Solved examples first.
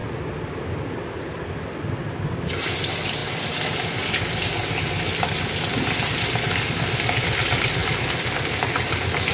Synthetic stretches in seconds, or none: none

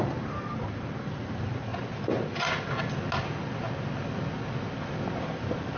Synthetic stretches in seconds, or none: 0.0-1.7 (vocoder, BigVGAN v2); 5.2-5.8

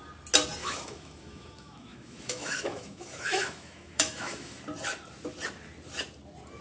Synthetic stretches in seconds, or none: 0.6-4.6 (autoencoder, DAC-VAE)

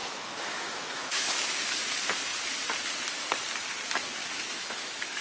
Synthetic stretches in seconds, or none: 0.0-1.6 (autoencoder, DAC-VAE); 4.2-5.2